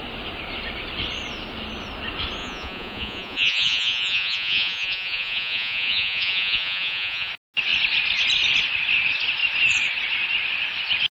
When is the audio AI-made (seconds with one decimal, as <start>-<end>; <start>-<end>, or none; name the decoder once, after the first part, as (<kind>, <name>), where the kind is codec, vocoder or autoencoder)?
2.4-7.3 (vocoder, Vocos)

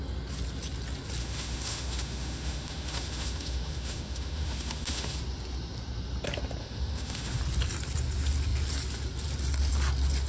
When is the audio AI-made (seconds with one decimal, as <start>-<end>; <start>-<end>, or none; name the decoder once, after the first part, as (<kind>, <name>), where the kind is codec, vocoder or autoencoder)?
1.2-5.2 (autoencoder, DAC-VAE); 6.6-7.4

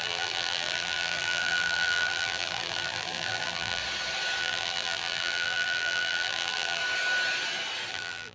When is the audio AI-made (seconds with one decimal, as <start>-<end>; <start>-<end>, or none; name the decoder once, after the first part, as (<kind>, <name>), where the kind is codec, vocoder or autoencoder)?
0.0-3.8 (vocoder, BigVGAN v2); 4.4-6.8; 7.9-8.3

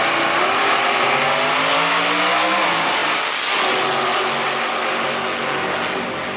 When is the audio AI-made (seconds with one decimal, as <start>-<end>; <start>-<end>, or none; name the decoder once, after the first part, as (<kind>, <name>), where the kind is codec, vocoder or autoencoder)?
none

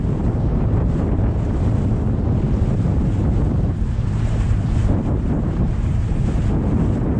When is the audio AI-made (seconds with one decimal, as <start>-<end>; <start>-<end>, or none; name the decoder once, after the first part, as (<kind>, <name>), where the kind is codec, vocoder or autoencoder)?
0.5-1.2 (vocoder, BigVGAN v2); 3.2-6.4

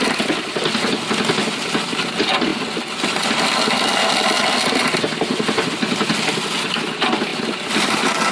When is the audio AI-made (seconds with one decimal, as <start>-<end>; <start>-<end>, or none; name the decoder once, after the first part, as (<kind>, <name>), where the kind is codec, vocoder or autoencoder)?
none

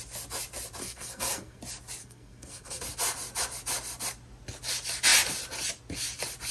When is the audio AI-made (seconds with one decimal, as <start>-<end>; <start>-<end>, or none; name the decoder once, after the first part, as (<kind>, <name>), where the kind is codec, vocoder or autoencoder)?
0.8-1.6 (codec, SNAC); 2.0-2.8